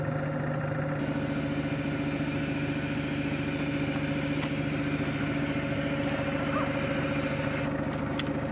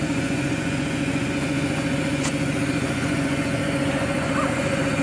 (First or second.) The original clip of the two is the first